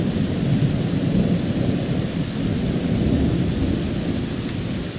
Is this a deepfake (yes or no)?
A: no